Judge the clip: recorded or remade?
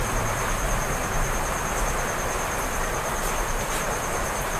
recorded